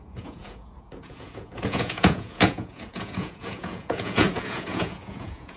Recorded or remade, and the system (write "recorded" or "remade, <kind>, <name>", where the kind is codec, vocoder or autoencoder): remade, vocoder, Vocos